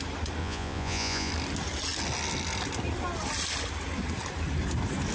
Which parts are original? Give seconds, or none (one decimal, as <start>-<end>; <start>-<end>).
0.0-0.4; 1.3-5.1